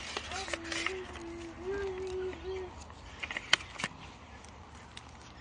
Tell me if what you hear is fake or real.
real